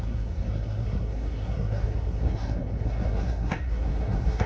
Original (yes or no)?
no